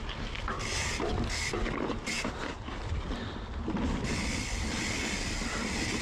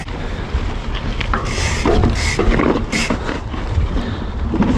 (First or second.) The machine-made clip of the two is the second